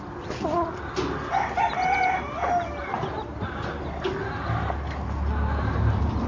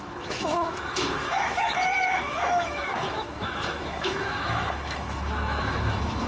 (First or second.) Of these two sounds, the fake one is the second